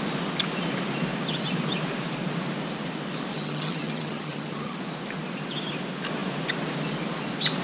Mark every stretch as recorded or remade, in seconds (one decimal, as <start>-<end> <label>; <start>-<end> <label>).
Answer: 0.0-3.3 recorded; 3.3-4.8 remade; 4.8-7.6 recorded